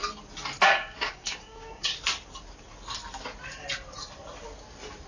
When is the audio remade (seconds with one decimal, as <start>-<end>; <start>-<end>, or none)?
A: 0.7-1.9